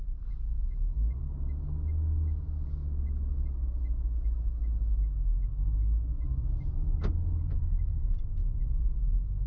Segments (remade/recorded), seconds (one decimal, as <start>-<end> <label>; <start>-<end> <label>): 0.0-0.6 recorded; 0.6-1.2 remade; 1.2-8.4 recorded; 8.4-9.5 remade